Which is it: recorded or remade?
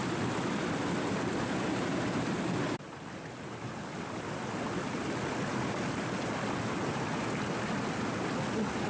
recorded